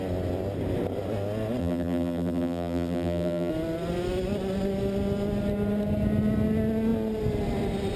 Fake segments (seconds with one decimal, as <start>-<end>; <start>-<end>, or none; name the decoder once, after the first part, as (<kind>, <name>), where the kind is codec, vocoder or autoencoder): 1.6-3.5 (vocoder, BigVGAN v2)